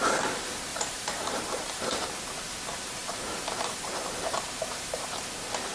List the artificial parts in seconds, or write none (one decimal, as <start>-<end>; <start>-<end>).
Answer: 0.7-2.1; 3.0-5.1